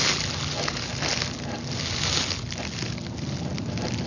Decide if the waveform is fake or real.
real